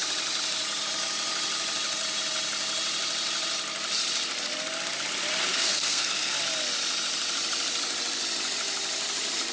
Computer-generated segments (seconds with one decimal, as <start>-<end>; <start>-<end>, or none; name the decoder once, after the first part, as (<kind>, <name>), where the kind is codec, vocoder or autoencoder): 5.5-6.3 (codec, SNAC)

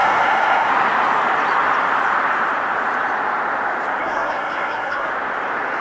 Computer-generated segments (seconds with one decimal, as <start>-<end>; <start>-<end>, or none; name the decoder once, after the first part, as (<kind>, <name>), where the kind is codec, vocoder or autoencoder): 0.0-0.7 (codec, SNAC); 4.0-5.1